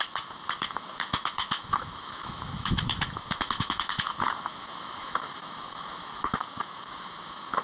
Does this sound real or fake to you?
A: fake